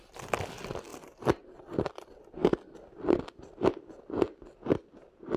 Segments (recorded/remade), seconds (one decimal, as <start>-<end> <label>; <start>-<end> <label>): 0.0-5.4 recorded